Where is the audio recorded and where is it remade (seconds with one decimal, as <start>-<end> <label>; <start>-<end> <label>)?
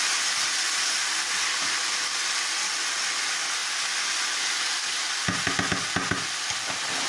0.0-7.1 recorded